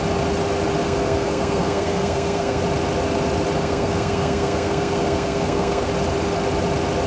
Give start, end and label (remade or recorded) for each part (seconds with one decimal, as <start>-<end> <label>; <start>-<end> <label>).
0.0-0.8 recorded; 0.8-2.6 remade; 2.6-3.6 recorded; 3.6-5.9 remade; 5.9-7.1 recorded